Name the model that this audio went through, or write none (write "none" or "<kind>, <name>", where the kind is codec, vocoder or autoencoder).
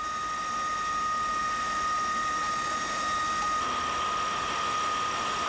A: none